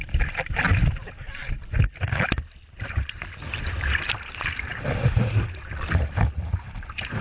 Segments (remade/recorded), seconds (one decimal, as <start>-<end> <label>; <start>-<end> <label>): 0.0-7.2 recorded